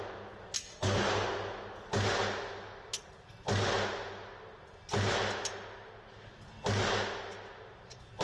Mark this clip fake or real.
real